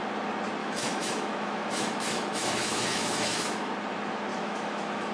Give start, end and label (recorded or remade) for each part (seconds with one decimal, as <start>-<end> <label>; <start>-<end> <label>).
0.0-0.6 recorded; 0.6-3.7 remade; 3.7-4.3 recorded; 4.3-5.1 remade